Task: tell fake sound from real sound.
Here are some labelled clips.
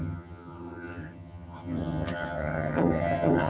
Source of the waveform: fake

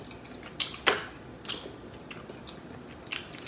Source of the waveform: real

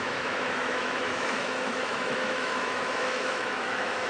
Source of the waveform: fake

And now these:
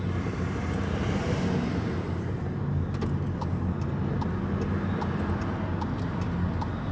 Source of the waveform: real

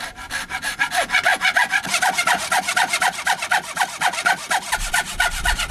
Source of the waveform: real